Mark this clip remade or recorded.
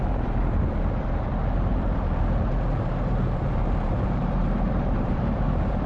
remade